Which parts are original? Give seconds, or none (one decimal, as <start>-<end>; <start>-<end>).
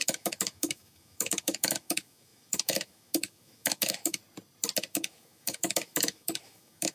4.2-4.9